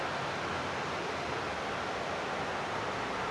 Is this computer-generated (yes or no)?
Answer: no